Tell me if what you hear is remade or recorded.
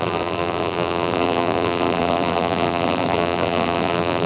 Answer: remade